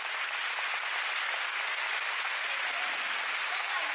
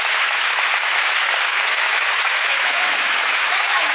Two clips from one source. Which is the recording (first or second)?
first